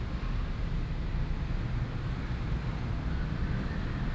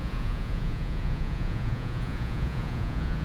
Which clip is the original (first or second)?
first